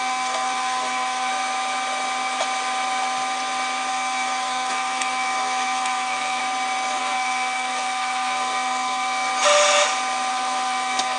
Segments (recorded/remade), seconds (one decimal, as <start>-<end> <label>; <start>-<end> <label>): 0.0-1.3 remade; 1.3-3.9 recorded; 3.9-6.4 remade; 6.4-7.0 recorded; 7.0-9.3 remade; 9.3-10.3 recorded; 10.3-11.2 remade